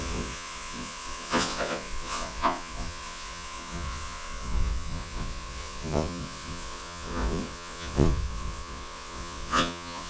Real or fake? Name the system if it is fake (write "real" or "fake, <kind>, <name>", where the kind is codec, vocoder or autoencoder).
fake, vocoder, Vocos